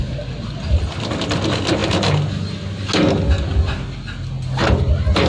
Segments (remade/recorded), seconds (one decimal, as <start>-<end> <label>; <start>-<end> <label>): 0.0-5.3 recorded